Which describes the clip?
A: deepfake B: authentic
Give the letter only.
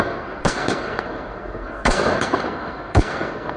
A